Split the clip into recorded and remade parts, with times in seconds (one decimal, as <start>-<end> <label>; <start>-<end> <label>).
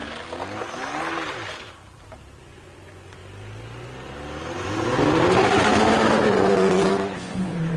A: 0.0-2.4 recorded; 2.4-3.2 remade; 3.2-6.3 recorded; 6.3-7.8 remade